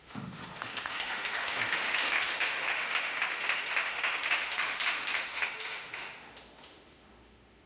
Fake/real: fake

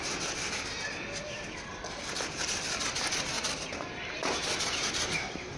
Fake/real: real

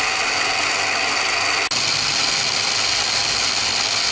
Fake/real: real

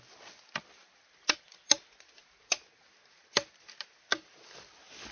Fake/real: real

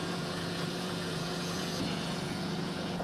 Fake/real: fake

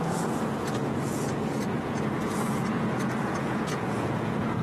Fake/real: fake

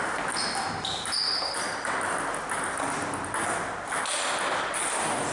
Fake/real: real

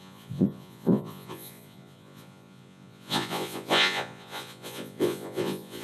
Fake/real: fake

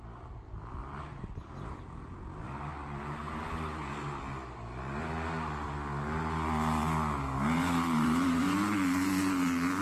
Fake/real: real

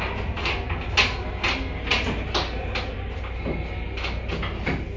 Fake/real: real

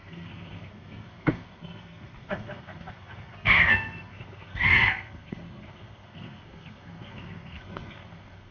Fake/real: fake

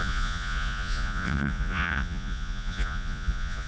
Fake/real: fake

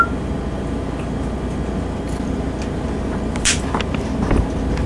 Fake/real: real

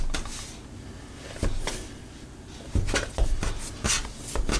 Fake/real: real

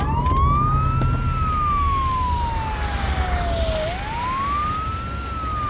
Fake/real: real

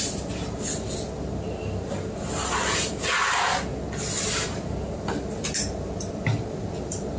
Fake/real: real